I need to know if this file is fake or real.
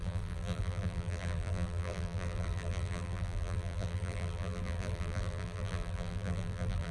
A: fake